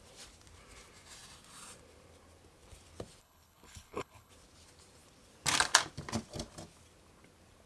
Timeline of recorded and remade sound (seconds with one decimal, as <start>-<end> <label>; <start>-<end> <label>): 0.0-3.2 recorded; 3.2-4.3 remade; 4.3-7.7 recorded